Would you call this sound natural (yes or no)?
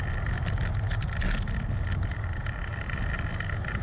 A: yes